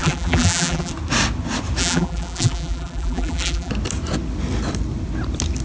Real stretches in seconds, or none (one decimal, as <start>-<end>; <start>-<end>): 0.9-1.8; 3.7-5.6